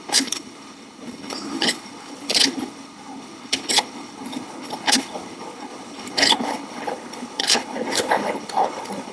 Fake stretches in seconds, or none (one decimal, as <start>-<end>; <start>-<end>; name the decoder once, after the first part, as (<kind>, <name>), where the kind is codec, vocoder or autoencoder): 0.0-9.1 (codec, HILCodec)